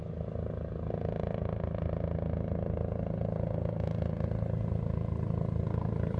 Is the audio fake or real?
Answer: real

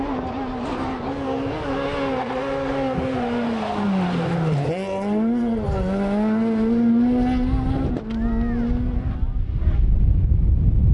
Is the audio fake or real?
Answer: real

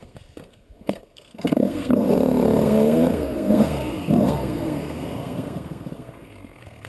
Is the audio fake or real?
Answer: fake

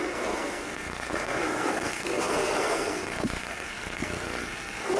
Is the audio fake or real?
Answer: fake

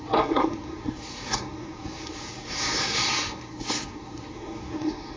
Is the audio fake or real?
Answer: fake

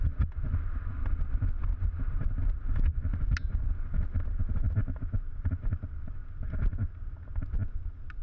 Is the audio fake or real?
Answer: real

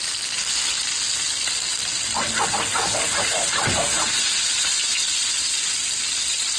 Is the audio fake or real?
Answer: real